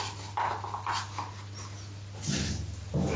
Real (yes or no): yes